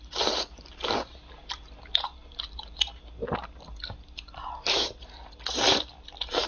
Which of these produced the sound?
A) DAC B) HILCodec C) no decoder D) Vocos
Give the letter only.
C